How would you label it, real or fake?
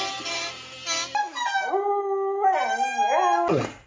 real